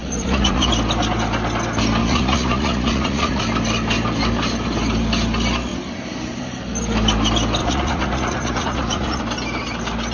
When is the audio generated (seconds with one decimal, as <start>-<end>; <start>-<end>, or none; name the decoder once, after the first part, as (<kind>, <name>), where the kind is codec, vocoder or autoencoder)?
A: 0.0-0.7 (vocoder, Vocos); 2.0-3.4; 7.6-9.2